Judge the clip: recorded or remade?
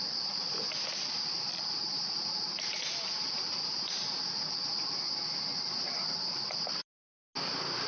recorded